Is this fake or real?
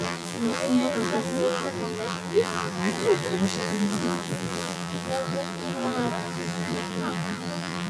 fake